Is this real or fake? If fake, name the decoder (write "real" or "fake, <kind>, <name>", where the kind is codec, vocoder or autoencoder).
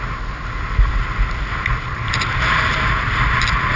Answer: real